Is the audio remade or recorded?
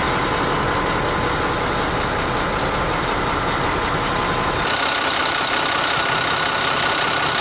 recorded